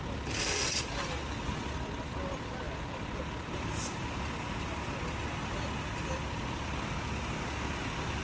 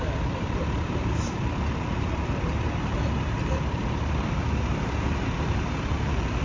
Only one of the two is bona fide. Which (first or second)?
first